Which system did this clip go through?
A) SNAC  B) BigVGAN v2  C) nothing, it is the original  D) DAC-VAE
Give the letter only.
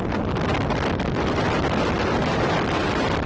B